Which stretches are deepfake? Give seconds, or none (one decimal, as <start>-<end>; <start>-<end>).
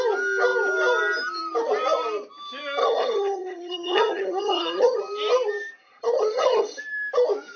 2.8-5.0; 5.8-6.8